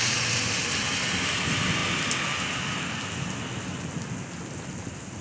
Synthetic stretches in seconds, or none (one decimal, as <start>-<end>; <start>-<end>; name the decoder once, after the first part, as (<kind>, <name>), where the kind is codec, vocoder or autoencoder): none